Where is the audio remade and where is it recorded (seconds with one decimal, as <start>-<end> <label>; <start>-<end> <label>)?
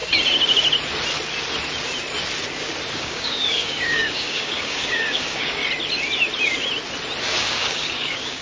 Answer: 0.0-2.9 recorded; 2.9-5.6 remade; 5.6-7.2 recorded; 7.2-8.4 remade